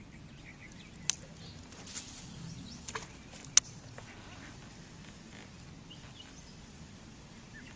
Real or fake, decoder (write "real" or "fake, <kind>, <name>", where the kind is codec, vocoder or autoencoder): real